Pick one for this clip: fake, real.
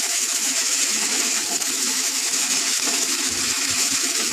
fake